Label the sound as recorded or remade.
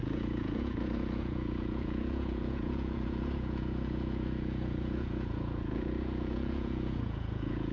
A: remade